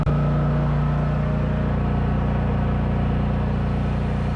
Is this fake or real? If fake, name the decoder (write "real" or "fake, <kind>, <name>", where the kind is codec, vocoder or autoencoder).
real